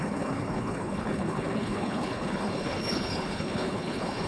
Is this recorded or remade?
remade